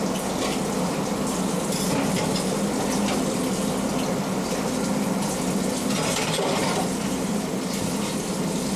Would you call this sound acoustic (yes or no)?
yes